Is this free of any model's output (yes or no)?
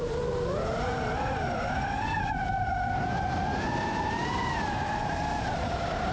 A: no